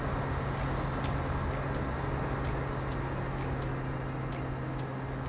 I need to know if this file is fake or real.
real